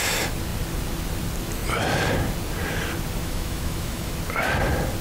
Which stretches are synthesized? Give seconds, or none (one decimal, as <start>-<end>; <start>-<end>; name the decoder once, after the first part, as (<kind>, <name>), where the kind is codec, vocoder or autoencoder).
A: 3.2-4.1 (autoencoder, DAC-VAE)